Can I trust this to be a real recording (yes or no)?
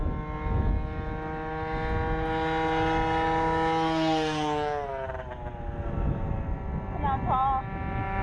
yes